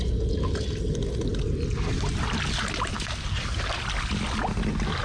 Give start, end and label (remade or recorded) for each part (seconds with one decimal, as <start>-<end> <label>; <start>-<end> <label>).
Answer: 0.0-5.0 recorded